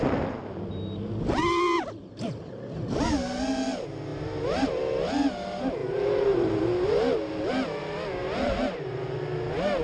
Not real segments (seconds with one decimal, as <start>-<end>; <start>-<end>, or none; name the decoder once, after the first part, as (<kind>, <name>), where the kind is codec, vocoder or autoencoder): 4.1-4.8 (vocoder, BigVGAN v2); 5.8-6.5; 8.2-9.0